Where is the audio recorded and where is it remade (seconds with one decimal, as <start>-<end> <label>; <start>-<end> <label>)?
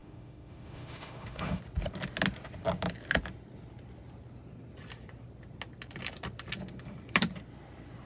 0.0-1.6 remade; 1.6-8.1 recorded